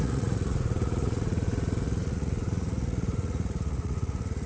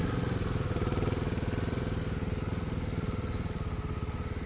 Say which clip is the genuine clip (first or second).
second